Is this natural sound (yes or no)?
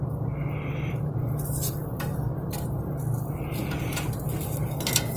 yes